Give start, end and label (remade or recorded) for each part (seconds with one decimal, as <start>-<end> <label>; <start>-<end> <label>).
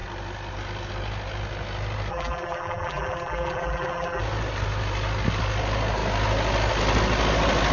0.0-2.1 recorded; 2.1-4.2 remade; 4.2-7.7 recorded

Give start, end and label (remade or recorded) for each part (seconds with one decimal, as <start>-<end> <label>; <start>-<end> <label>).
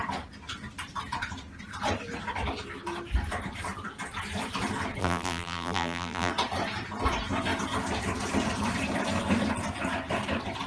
0.0-5.0 recorded; 5.0-6.3 remade; 6.3-10.7 recorded